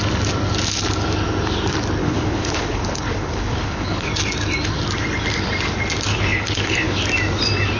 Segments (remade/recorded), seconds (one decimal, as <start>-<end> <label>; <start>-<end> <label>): 0.0-2.0 recorded; 2.0-4.1 remade; 4.1-6.1 recorded; 6.1-7.0 remade; 7.0-7.8 recorded